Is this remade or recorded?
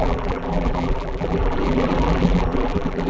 remade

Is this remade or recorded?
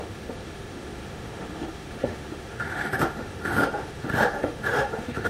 remade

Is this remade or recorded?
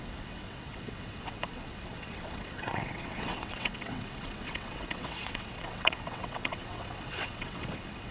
remade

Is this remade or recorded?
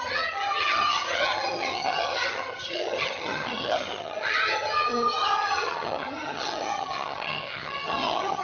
remade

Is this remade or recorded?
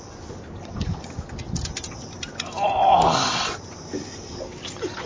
recorded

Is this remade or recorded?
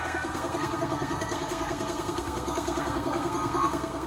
remade